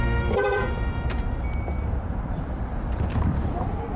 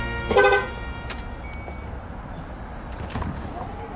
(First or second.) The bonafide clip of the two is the second